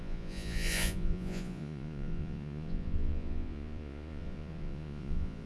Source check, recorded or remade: remade